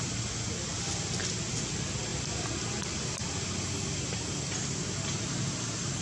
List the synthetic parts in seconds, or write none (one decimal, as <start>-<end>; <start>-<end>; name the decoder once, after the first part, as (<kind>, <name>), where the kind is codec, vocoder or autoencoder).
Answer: none